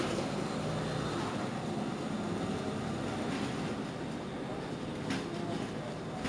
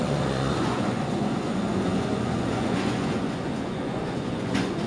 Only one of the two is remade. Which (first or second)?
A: second